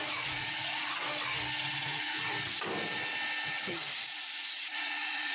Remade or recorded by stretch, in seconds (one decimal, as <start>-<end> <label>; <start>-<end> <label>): 0.0-1.0 remade; 1.0-1.8 recorded; 1.8-2.2 remade; 2.2-4.2 recorded; 4.2-5.3 remade